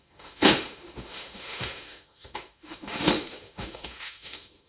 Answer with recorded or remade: remade